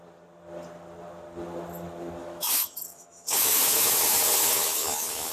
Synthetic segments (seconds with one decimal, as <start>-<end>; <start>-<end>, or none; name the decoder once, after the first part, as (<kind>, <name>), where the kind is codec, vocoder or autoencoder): 2.2-5.3 (autoencoder, DAC-VAE)